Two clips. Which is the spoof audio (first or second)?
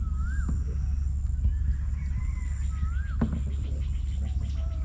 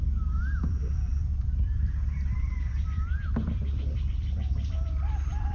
second